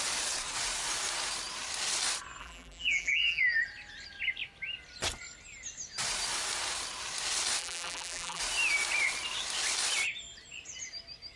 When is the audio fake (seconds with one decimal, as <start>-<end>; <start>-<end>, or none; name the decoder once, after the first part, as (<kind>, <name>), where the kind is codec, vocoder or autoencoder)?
2.4-3.4 (vocoder, BigVGAN v2); 7.6-8.4